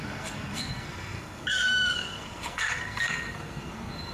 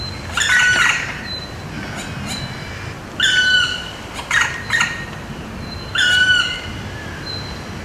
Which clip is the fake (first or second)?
first